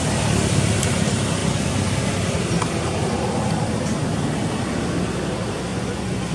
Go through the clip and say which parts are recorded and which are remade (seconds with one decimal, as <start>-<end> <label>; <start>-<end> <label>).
0.0-5.7 recorded; 5.7-6.3 remade